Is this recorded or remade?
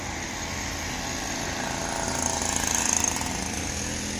recorded